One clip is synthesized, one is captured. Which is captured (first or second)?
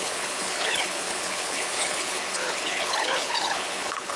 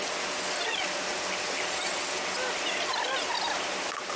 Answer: second